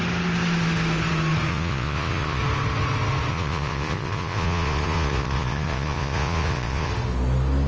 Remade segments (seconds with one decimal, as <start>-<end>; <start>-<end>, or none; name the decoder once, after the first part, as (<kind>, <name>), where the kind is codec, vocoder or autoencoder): 1.5-2.4 (vocoder, Vocos); 3.3-6.9